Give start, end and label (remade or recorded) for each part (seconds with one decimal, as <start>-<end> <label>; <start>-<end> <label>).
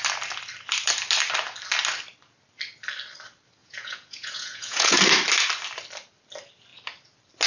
0.0-3.6 recorded; 3.6-5.0 remade; 5.0-7.5 recorded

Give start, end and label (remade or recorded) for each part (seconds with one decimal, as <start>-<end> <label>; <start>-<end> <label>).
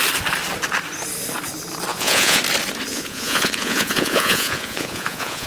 0.0-1.9 recorded; 1.9-2.4 remade; 2.4-2.9 recorded; 2.9-5.5 remade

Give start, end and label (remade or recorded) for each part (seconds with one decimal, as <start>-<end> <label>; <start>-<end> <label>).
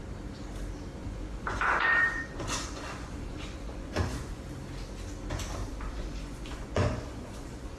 0.0-1.0 recorded; 1.0-4.4 remade; 4.4-5.7 recorded; 5.7-7.8 remade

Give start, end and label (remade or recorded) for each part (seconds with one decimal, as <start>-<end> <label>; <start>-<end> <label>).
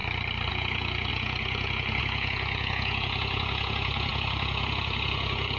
0.0-0.5 recorded; 0.5-5.6 remade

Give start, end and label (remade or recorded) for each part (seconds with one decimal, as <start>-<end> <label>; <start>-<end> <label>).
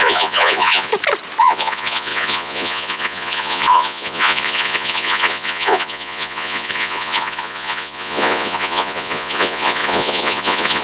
0.0-0.9 remade; 0.9-1.4 recorded; 1.4-10.8 remade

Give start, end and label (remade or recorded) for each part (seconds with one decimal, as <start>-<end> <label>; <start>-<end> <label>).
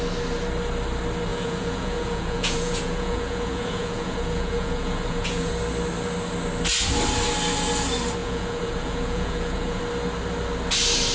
0.0-1.3 recorded; 1.3-5.5 remade; 5.5-8.2 recorded; 8.2-9.8 remade; 9.8-11.1 recorded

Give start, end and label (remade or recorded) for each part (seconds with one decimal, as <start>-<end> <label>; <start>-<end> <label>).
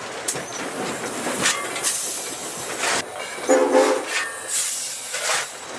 0.0-5.8 recorded